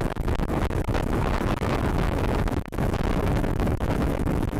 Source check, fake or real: fake